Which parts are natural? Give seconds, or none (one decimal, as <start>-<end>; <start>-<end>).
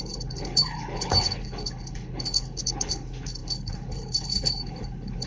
none